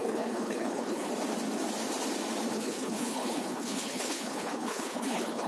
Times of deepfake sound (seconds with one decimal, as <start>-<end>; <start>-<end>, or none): 0.0-1.1; 2.5-5.5